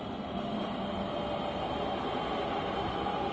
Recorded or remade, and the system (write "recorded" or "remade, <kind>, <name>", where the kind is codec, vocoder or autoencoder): recorded